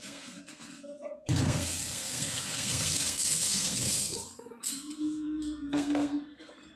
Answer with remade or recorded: remade